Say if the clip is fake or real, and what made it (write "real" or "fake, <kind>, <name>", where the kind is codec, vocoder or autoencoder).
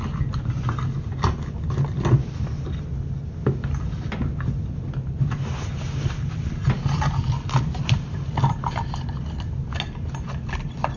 real